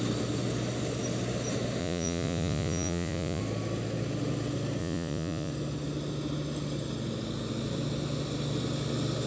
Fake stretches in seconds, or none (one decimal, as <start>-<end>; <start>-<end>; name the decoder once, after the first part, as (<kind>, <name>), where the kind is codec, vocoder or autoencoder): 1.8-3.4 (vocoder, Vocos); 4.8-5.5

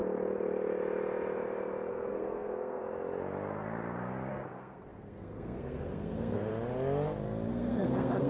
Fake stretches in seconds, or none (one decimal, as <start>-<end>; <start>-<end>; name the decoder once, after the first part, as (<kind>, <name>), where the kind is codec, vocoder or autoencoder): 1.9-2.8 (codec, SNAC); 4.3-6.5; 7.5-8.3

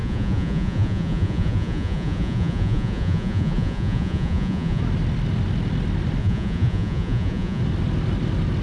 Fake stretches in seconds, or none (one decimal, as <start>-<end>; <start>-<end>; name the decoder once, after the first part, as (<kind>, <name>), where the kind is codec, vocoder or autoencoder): 0.0-4.8 (vocoder, Vocos); 6.2-7.6

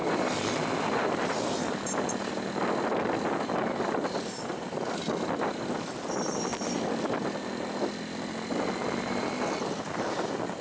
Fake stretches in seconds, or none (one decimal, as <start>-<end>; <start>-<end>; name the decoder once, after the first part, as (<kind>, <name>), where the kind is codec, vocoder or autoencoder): none

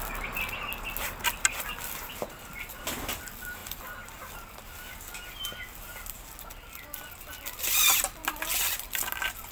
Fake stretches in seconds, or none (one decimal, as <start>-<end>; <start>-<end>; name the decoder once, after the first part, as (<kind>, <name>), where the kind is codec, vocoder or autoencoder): none

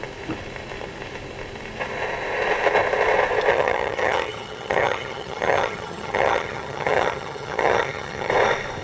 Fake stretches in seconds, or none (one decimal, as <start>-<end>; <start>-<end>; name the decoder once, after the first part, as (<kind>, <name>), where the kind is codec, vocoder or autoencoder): 3.5-8.3 (vocoder, HiFi-GAN)

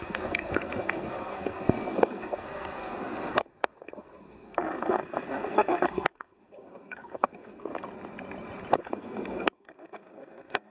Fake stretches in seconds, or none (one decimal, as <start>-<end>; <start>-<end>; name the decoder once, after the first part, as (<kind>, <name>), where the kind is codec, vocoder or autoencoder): 0.0-7.7 (codec, SNAC); 8.7-10.7